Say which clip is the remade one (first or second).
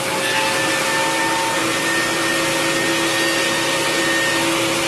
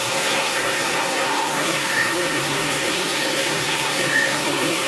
second